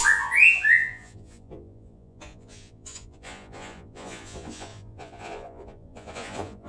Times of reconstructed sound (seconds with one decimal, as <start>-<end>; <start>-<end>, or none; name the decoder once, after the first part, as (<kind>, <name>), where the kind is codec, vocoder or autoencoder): 0.0-6.7 (vocoder, Vocos)

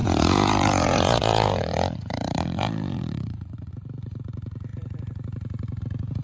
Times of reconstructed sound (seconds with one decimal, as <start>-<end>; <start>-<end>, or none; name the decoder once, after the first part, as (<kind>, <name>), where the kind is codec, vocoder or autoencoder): 0.0-3.7 (vocoder, Vocos)

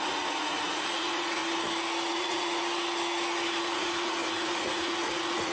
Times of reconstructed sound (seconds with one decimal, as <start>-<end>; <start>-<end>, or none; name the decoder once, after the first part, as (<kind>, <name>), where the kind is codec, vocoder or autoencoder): 0.0-1.4 (vocoder, Vocos); 2.1-2.6; 3.6-5.5

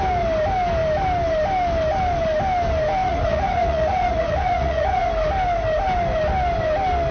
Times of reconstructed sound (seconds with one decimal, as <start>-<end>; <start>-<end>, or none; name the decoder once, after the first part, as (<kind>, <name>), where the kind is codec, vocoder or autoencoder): 3.0-5.1 (vocoder, Vocos)

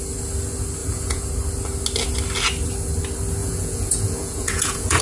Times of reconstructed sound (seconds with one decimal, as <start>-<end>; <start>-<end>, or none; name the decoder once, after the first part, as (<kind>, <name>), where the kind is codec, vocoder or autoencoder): 0.8-1.3 (vocoder, Vocos); 3.4-5.0

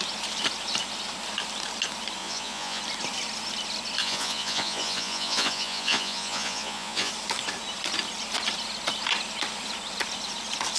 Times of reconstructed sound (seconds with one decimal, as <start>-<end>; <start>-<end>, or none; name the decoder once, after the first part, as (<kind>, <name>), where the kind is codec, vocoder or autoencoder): 2.2-2.8 (vocoder, Vocos); 4.0-7.1